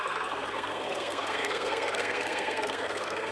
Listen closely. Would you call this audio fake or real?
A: fake